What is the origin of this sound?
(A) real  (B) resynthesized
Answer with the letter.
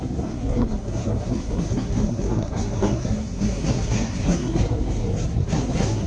B